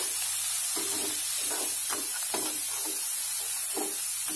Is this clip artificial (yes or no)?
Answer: no